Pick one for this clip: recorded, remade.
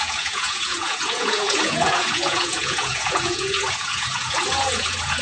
remade